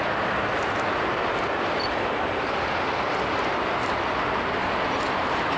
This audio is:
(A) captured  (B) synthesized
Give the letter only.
A